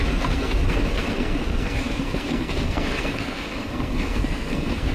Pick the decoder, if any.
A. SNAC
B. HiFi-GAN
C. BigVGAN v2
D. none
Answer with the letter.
A